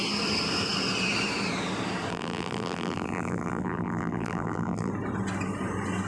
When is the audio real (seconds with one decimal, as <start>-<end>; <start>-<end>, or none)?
0.0-2.1; 4.9-6.1